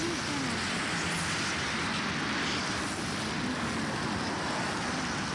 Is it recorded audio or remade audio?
recorded